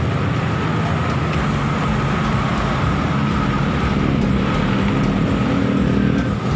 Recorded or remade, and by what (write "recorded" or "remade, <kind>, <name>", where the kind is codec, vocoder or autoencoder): recorded